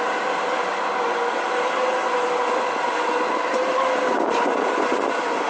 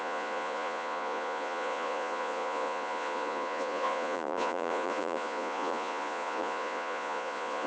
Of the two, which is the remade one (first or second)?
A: second